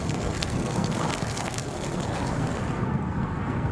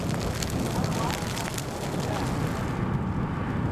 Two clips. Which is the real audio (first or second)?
second